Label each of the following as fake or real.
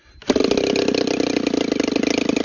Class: real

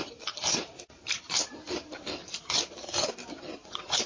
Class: fake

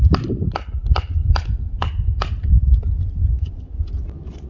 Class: real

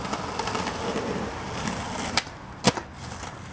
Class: real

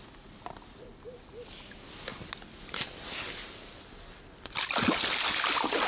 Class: real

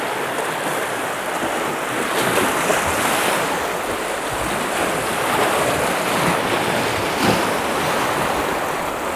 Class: real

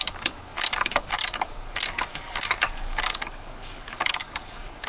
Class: fake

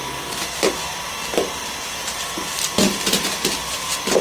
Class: real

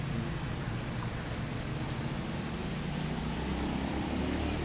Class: real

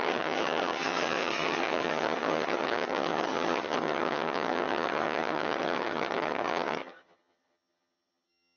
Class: fake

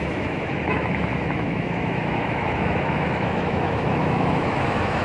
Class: fake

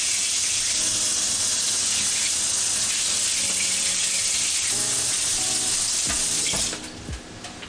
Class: real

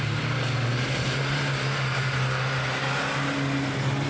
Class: real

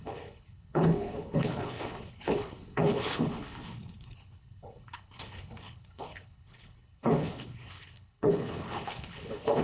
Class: fake